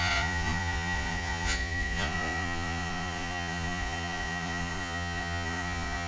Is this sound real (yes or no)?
no